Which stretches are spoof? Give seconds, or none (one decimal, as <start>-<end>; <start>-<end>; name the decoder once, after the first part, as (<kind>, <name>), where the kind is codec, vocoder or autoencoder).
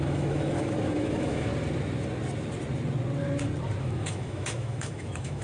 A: 0.0-1.5 (autoencoder, DAC-VAE); 3.8-5.4